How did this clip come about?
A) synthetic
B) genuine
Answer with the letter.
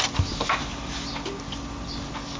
B